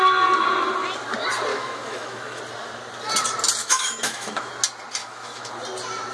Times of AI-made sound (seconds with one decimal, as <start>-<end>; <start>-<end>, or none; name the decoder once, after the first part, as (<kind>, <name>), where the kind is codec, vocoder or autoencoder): 1.5-2.4 (autoencoder, DAC-VAE); 3.6-4.5; 5.0-5.5